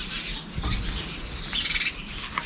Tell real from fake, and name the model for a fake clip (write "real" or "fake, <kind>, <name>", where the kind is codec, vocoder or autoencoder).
real